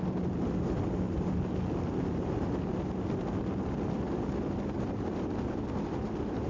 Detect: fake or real real